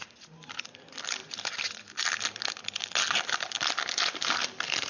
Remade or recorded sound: recorded